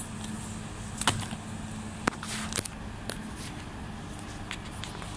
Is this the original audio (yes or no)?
yes